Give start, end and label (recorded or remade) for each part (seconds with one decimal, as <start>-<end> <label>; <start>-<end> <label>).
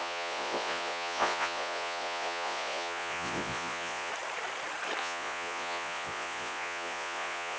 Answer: 0.0-4.1 remade; 4.1-5.0 recorded; 5.0-7.6 remade